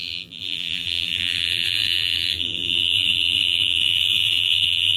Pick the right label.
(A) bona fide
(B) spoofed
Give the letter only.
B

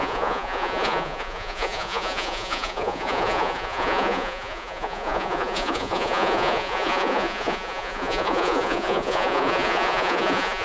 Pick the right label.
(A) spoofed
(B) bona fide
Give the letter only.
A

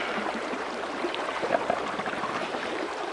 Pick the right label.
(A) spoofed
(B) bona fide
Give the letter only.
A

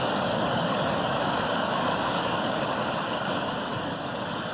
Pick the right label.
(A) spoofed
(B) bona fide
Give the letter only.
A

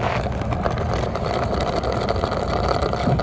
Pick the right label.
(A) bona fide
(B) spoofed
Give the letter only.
A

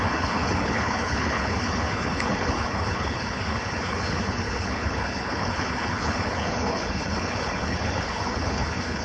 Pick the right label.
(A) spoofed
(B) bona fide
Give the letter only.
A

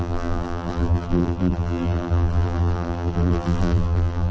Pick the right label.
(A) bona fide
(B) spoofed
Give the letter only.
B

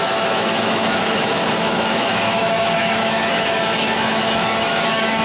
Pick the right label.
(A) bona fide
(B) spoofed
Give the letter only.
B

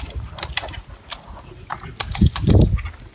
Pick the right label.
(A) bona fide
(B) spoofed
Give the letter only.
A